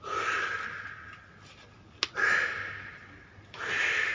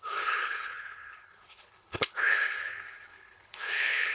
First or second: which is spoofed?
second